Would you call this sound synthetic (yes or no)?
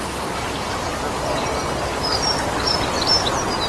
no